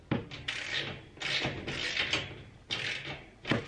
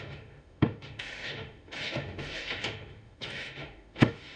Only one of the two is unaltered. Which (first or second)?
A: first